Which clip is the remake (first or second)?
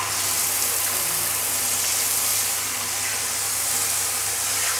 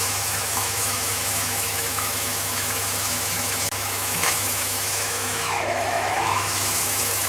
second